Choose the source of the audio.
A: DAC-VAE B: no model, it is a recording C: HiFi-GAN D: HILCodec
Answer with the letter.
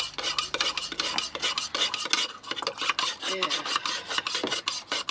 B